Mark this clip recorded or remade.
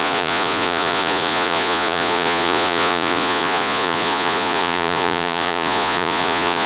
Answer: remade